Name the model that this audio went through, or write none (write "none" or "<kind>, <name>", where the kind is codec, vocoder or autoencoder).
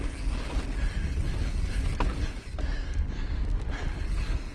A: none